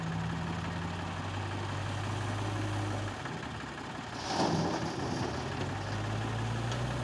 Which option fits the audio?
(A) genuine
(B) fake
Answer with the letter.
A